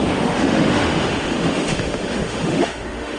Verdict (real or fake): fake